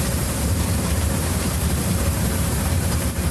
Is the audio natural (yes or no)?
no